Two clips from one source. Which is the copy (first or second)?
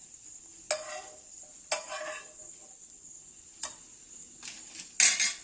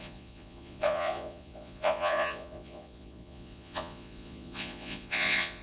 second